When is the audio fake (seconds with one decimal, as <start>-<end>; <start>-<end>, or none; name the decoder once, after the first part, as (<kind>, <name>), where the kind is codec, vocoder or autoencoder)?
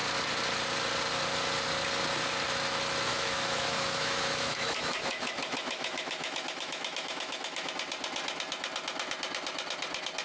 3.1-7.7 (autoencoder, DAC-VAE)